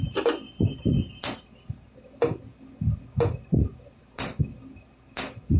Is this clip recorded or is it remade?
recorded